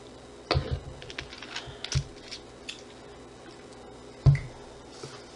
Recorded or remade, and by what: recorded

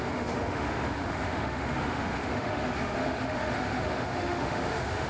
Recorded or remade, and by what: remade, autoencoder, DAC-VAE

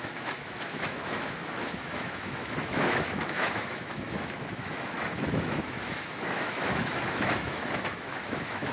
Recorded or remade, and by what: remade, autoencoder, DAC-VAE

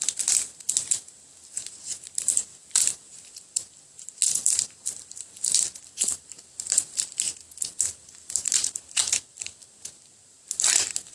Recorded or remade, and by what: recorded